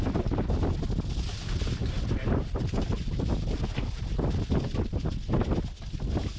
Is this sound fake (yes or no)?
no